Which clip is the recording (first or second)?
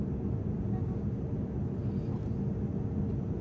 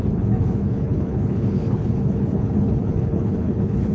first